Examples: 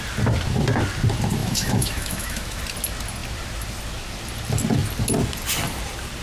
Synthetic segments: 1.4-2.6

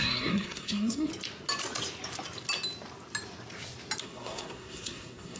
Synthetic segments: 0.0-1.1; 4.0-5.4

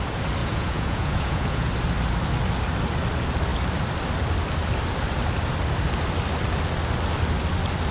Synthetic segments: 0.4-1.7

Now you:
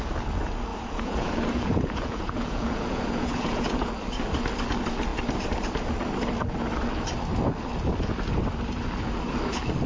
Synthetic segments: 0.7-3.9

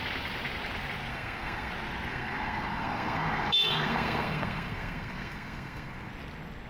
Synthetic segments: 1.1-1.7; 2.1-6.1

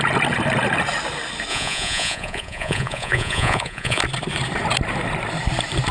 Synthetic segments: 1.5-4.0

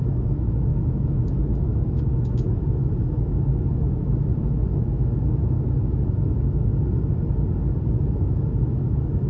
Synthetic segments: 0.0-6.7; 7.9-9.3